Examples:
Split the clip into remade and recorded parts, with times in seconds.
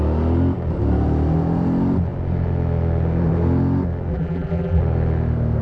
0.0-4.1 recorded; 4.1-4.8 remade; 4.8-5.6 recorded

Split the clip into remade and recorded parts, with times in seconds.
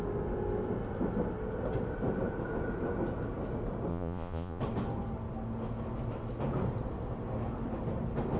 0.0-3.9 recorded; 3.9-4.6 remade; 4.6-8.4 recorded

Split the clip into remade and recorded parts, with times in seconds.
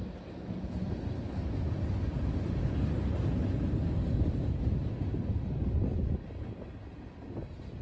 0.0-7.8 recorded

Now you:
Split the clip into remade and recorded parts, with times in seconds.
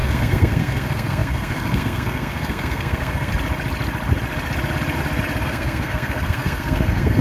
0.0-3.3 remade; 3.3-5.4 recorded; 5.4-7.2 remade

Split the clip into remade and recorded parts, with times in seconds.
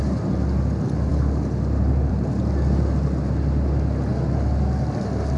0.0-5.4 recorded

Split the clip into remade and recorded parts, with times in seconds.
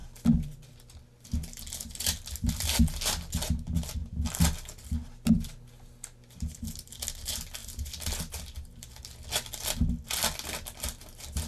0.0-11.5 recorded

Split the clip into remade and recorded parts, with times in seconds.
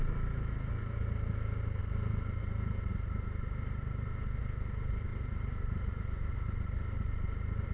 0.0-2.9 recorded; 2.9-4.4 remade; 4.4-5.1 recorded; 5.1-6.3 remade; 6.3-7.7 recorded